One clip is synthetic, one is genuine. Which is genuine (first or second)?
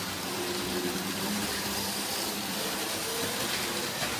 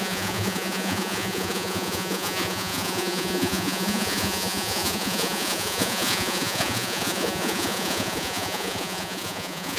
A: first